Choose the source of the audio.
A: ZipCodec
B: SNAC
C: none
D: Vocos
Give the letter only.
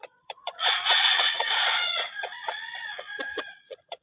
D